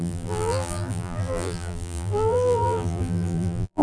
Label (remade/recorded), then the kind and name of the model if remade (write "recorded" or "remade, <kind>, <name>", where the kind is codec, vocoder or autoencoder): remade, vocoder, BigVGAN v2